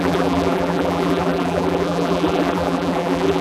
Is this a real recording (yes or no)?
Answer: no